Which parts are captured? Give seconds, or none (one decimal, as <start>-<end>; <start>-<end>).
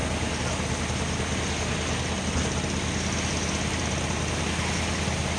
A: 0.0-5.4